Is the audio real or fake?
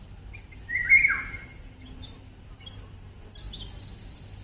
real